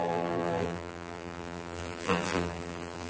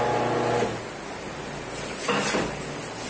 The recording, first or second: second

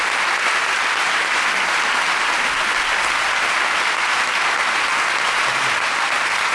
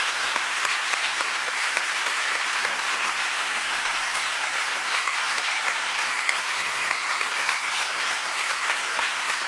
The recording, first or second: first